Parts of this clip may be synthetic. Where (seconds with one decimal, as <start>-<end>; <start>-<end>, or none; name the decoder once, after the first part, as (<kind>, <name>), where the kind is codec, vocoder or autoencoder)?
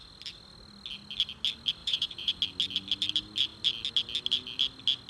1.8-2.4 (vocoder, Vocos)